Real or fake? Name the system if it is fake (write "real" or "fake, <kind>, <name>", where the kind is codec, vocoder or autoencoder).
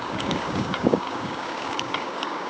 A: fake, codec, DAC